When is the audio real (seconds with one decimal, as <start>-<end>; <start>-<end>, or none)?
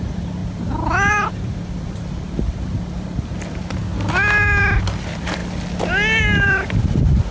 3.8-4.6; 5.4-6.2